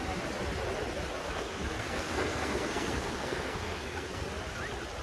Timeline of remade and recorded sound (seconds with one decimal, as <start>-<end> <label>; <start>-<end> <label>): 0.0-1.2 recorded; 1.2-4.2 remade; 4.2-5.0 recorded